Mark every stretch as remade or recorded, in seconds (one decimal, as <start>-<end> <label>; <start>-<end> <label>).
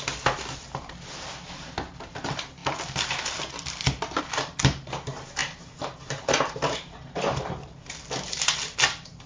0.0-5.4 recorded; 5.4-7.9 remade; 7.9-9.3 recorded